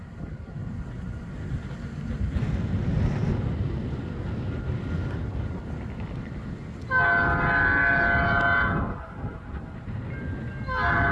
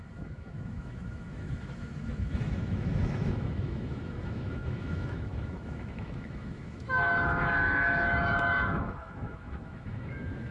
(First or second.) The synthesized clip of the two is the second